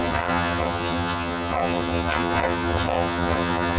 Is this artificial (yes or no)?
yes